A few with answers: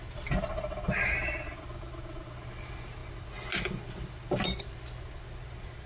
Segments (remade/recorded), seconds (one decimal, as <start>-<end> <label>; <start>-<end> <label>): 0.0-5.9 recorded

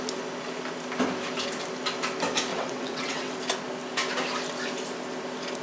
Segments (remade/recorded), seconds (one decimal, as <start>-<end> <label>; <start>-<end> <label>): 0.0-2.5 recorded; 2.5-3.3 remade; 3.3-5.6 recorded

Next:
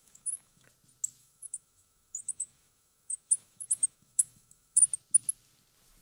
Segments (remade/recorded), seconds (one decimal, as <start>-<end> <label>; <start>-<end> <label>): 0.0-0.7 remade; 0.7-1.2 recorded; 1.2-4.8 remade; 4.8-6.0 recorded

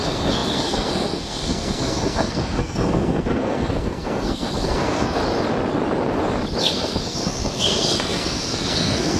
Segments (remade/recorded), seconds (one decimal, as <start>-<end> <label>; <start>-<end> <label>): 0.0-5.2 remade; 5.2-6.6 recorded; 6.6-9.2 remade

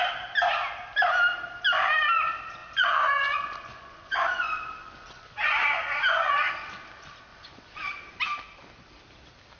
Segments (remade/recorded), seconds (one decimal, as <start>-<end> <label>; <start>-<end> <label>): 0.0-2.6 recorded; 2.6-6.3 remade; 6.3-7.3 recorded; 7.3-8.2 remade; 8.2-9.6 recorded